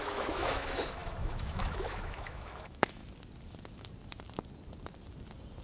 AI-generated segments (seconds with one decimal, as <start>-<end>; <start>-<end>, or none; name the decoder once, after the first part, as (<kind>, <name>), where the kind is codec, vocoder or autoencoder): 0.0-3.0 (autoencoder, DAC-VAE)